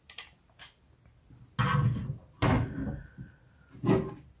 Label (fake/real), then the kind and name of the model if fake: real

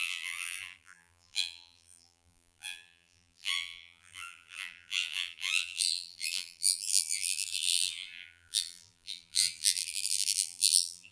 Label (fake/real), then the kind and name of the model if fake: fake, vocoder, BigVGAN v2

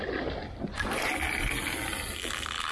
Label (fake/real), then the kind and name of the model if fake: real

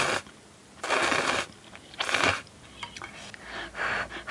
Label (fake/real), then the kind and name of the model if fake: real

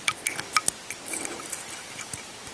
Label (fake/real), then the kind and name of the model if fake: real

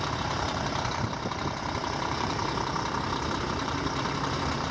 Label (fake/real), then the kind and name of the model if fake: fake, vocoder, BigVGAN v2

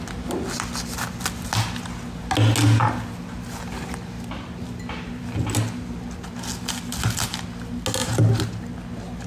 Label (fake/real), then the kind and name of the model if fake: real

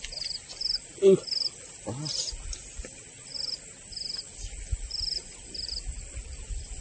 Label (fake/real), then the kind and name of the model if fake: real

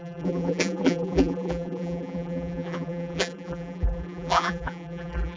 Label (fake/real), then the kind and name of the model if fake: fake, vocoder, BigVGAN v2